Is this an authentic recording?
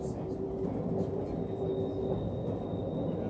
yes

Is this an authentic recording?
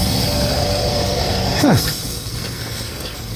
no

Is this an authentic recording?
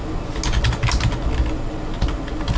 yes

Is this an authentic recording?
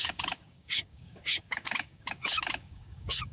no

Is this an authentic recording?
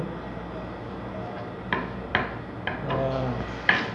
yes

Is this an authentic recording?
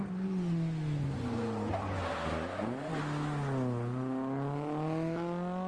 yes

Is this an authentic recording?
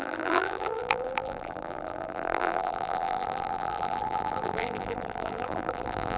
no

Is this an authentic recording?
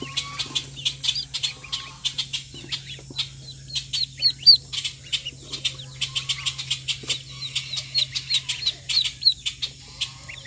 yes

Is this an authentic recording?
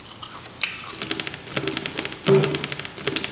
yes